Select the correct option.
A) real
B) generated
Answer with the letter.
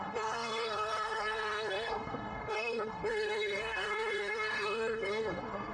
B